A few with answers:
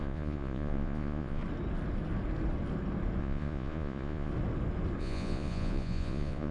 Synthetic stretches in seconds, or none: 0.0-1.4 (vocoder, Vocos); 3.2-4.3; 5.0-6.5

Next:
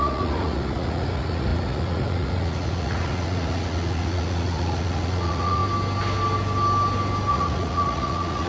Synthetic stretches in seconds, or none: 0.0-5.6 (vocoder, Vocos); 7.3-8.5

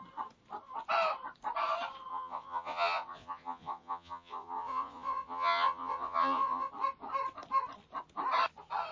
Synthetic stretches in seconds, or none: 2.1-6.7 (vocoder, Vocos)

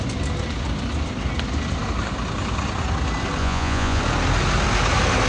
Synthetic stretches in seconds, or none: 3.4-4.0 (vocoder, Vocos)

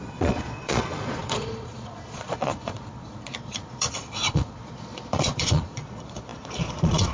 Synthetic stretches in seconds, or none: 0.0-7.1 (vocoder, Vocos)

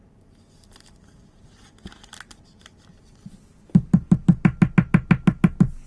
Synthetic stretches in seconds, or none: none

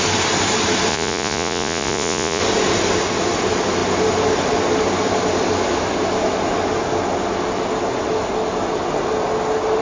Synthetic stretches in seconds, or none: 0.9-2.4 (vocoder, Vocos)